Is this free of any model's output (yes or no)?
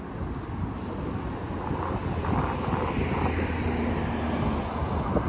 yes